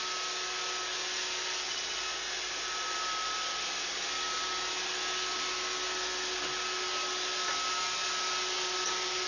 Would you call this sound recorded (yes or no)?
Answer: yes